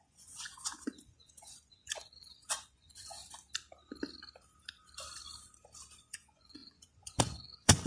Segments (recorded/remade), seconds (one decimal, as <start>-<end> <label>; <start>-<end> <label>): 0.0-3.2 remade; 3.2-6.0 recorded; 6.0-7.9 remade